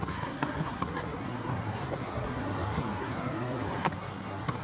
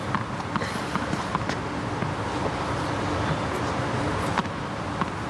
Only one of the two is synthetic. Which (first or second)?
first